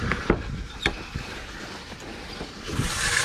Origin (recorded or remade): remade